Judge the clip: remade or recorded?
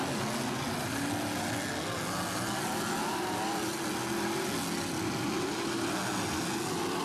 recorded